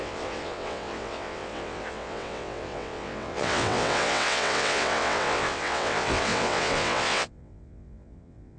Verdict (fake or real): fake